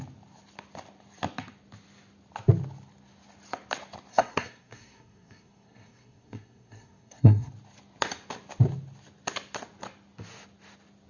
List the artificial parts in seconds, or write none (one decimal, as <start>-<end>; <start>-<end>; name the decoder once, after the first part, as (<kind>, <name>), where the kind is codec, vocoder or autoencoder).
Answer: 4.1-7.5 (codec, SNAC)